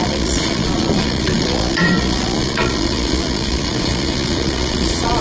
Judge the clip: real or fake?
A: fake